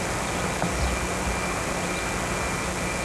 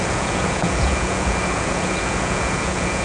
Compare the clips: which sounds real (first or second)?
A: first